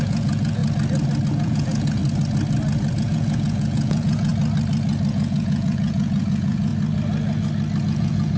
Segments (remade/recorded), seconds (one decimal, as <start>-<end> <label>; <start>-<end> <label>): 0.0-0.6 remade; 0.6-1.3 recorded; 1.3-2.0 remade; 2.0-2.9 recorded; 2.9-4.3 remade; 4.3-5.1 recorded; 5.1-6.7 remade; 6.7-7.8 recorded; 7.8-8.4 remade